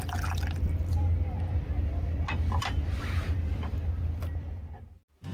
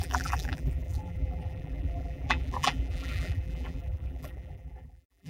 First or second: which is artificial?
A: second